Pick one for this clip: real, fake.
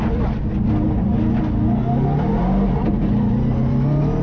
real